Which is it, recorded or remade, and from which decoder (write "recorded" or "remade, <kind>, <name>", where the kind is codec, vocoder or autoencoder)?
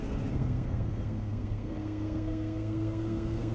remade, codec, SNAC